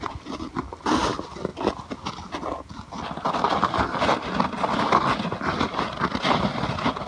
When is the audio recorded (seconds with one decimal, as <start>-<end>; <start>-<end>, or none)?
0.0-7.1